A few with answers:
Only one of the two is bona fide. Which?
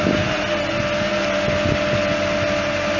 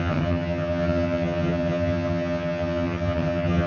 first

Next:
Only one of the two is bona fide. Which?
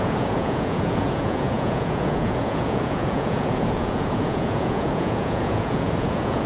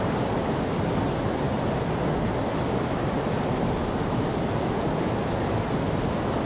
second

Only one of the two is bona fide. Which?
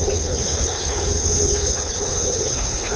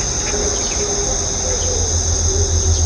second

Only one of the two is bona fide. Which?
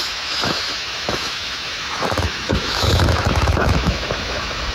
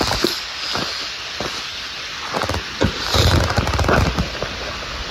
second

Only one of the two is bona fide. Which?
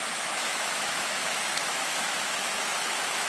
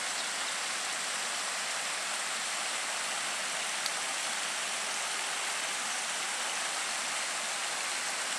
second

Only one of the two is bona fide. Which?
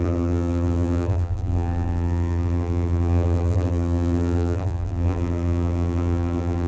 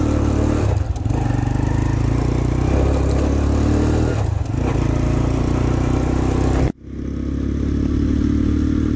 second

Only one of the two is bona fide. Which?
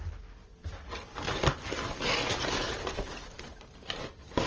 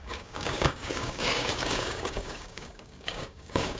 first